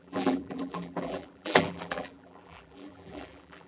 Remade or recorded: remade